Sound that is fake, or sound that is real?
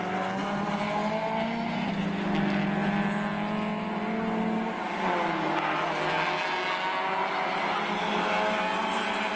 real